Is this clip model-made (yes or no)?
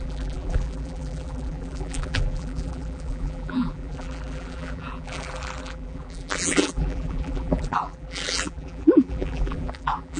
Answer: yes